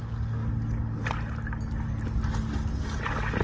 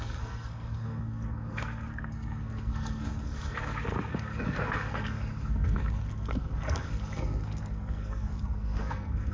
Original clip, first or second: first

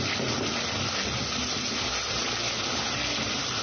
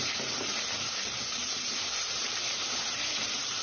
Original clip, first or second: first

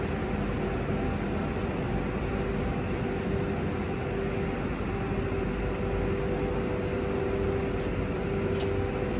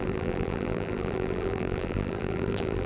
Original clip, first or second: first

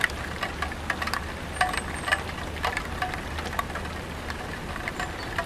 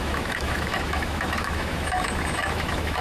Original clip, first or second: first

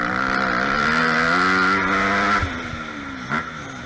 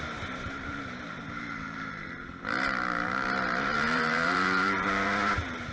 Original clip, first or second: first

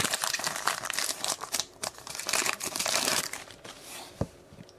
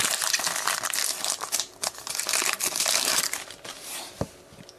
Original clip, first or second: second